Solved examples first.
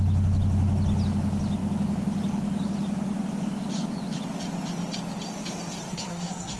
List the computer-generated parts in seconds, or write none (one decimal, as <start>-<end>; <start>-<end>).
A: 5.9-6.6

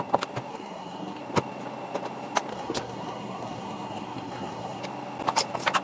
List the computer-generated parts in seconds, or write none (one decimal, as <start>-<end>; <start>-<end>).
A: 0.5-1.2; 2.5-4.8

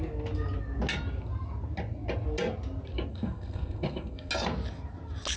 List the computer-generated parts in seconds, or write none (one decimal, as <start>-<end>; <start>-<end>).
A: 3.1-4.3

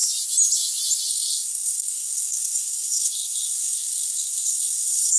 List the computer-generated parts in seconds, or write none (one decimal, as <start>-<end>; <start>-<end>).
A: 1.1-5.2

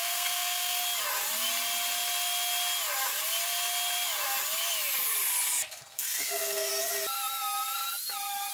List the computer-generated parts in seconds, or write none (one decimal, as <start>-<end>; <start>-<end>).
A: 0.0-0.8; 5.7-6.7

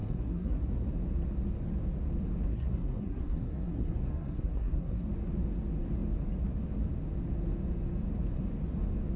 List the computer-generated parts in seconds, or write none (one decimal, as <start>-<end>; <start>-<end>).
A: 0.0-0.9; 2.5-5.1

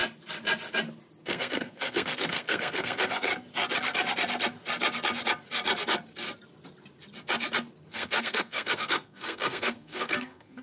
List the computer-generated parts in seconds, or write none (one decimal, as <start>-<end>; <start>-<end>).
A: 1.2-3.3; 7.9-10.6